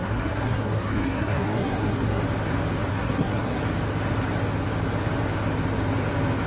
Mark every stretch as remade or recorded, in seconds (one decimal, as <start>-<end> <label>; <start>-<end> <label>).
0.0-2.2 remade; 2.2-2.9 recorded; 2.9-3.6 remade; 3.6-6.5 recorded

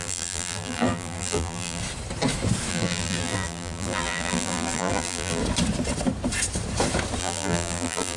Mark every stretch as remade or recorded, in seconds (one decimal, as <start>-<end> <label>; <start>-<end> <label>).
0.0-1.8 remade; 1.8-2.7 recorded; 2.7-5.4 remade; 5.4-7.2 recorded; 7.2-8.2 remade

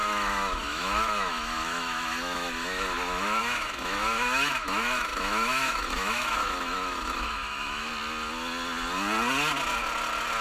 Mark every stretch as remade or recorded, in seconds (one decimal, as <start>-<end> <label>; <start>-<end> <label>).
0.0-7.9 remade; 7.9-10.4 recorded

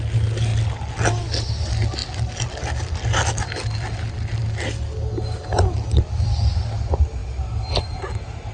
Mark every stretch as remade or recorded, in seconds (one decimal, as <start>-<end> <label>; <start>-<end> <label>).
0.0-8.5 recorded

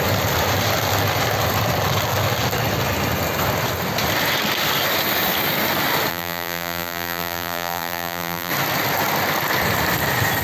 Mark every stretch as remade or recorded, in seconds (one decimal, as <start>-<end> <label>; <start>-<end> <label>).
0.0-6.1 recorded; 6.1-8.5 remade; 8.5-10.4 recorded

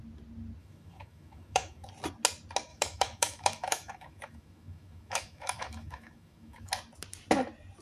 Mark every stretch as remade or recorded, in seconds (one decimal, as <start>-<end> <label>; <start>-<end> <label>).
0.0-0.6 recorded; 0.6-1.9 remade; 1.9-2.7 recorded; 2.7-6.7 remade; 6.7-7.8 recorded

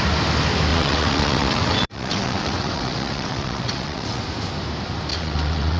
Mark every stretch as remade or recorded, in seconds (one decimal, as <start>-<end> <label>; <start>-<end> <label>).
0.0-0.7 recorded; 0.7-4.2 remade; 4.2-5.1 recorded; 5.1-5.8 remade

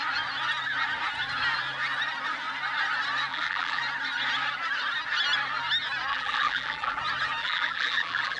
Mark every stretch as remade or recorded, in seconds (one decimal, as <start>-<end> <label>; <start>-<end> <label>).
0.0-3.3 recorded; 3.3-3.8 remade; 3.8-6.1 recorded; 6.1-7.0 remade; 7.0-7.4 recorded; 7.4-8.4 remade